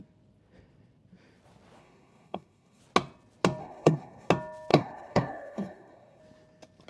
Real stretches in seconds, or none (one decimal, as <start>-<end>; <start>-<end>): 0.0-1.8; 2.8-3.6; 4.3-4.7; 6.2-6.9